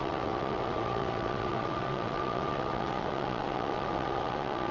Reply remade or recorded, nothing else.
remade